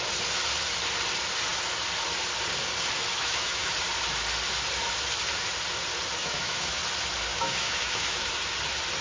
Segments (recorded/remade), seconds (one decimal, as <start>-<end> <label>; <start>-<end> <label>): 0.0-3.1 recorded; 3.1-3.7 remade; 3.7-6.2 recorded; 6.2-6.8 remade; 6.8-7.3 recorded; 7.3-8.3 remade; 8.3-9.0 recorded